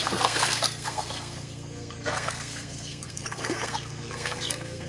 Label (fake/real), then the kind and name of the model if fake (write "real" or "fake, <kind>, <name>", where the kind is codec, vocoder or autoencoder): fake, codec, SNAC